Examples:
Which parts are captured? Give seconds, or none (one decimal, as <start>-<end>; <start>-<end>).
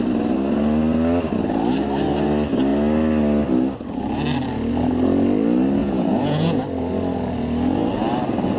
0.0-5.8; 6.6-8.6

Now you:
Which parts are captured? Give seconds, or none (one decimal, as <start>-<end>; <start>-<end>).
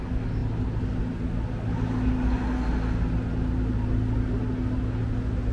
0.0-5.5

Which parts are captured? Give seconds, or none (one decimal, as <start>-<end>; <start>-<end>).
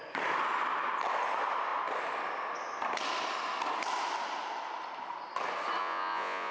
0.0-5.8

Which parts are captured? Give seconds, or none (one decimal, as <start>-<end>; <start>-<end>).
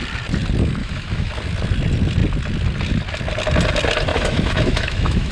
0.0-0.8; 1.3-4.1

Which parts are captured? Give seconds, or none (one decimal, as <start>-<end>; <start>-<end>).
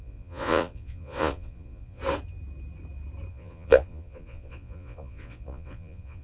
2.0-3.3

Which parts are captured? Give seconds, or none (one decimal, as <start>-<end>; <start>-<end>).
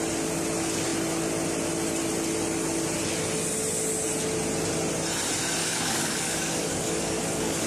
0.0-5.6